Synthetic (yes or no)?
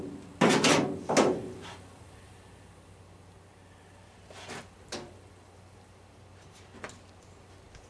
no